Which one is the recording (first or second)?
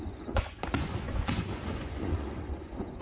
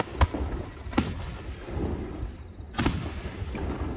second